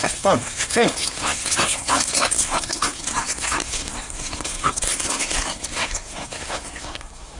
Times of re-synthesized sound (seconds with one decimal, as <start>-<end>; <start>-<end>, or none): 0.0-7.4